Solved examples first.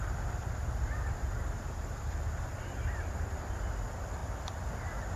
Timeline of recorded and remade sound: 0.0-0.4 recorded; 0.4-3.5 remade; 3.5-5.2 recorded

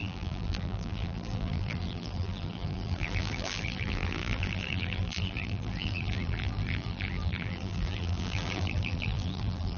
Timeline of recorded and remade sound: 0.0-9.8 remade

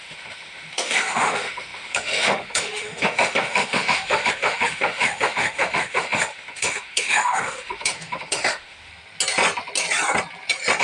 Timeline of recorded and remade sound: 0.0-8.9 remade; 8.9-10.8 recorded

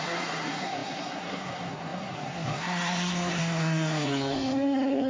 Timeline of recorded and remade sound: 0.0-5.1 remade

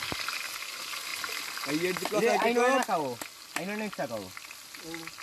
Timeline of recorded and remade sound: 0.0-5.2 recorded

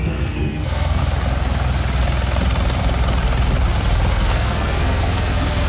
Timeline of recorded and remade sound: 0.0-1.0 remade; 1.0-4.1 recorded; 4.1-5.7 remade